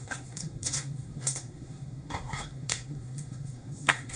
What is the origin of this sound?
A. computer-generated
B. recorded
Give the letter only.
A